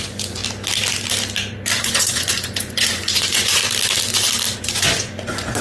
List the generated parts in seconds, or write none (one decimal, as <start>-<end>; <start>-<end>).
0.0-0.4; 1.8-3.6; 4.6-5.6